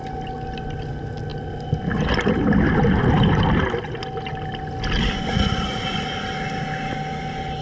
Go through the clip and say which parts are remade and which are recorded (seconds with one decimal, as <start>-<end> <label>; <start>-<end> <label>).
0.0-7.6 recorded